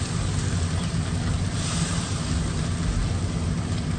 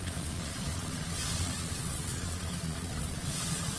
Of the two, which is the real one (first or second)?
first